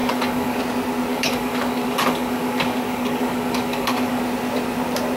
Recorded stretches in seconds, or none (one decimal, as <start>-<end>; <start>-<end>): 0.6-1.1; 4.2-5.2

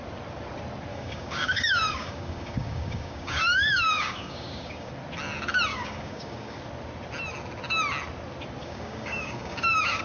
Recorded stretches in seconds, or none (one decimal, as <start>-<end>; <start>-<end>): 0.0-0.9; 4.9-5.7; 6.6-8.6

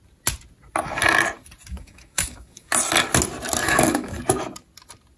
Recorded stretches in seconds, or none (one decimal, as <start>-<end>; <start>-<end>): 0.0-1.7; 2.7-3.6; 4.2-5.2